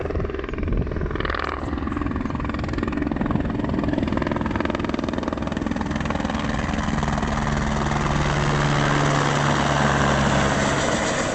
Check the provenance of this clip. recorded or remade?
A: recorded